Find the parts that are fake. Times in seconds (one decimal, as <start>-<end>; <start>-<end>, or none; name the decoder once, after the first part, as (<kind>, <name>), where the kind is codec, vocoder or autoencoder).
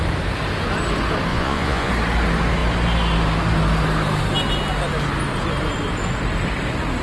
1.3-1.9 (vocoder, Vocos)